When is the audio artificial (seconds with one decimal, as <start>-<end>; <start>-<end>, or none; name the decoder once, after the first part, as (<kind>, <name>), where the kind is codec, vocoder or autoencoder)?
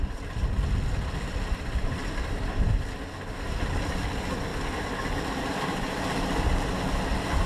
none